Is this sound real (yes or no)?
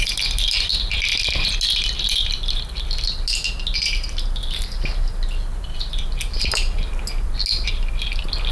yes